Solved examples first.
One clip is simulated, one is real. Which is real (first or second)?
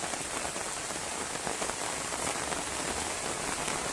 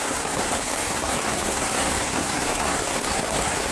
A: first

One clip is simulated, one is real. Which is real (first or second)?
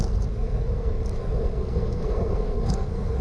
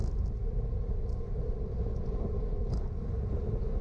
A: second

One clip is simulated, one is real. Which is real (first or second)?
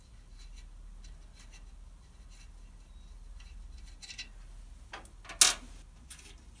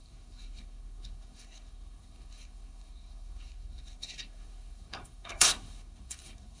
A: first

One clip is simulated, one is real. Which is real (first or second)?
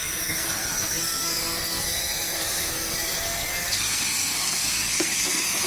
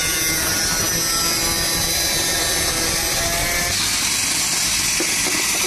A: second